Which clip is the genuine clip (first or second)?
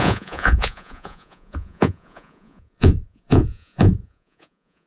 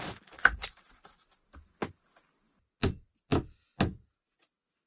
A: second